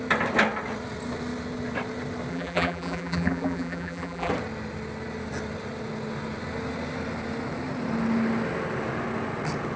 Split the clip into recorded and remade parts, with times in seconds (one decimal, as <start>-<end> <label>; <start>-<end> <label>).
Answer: 0.0-2.3 recorded; 2.3-4.3 remade; 4.3-9.8 recorded